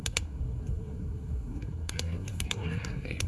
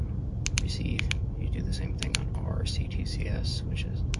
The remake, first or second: first